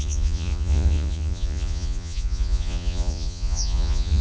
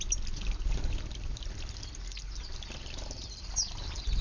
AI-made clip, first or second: first